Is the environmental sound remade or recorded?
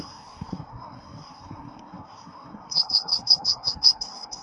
remade